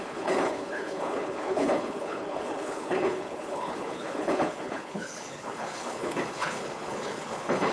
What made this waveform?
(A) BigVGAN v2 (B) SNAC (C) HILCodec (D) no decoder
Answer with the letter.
C